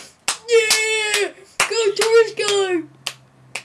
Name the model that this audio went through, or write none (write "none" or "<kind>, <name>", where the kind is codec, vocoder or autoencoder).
none